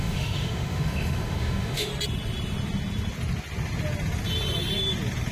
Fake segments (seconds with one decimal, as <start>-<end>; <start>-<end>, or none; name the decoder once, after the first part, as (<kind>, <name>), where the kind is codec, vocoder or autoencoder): 0.0-1.9 (autoencoder, DAC-VAE)